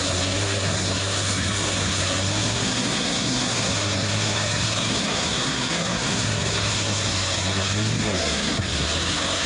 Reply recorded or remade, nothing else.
remade